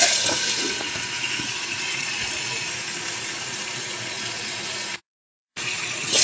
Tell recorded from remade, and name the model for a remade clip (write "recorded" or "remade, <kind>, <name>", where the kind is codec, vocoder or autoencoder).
remade, vocoder, Vocos